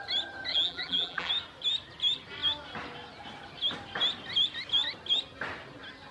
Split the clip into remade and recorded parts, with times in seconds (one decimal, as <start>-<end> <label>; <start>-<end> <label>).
0.0-0.5 recorded; 0.5-1.3 remade; 1.3-6.1 recorded